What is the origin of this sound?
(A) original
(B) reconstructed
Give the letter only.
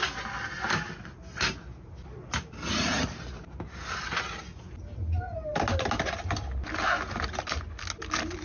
A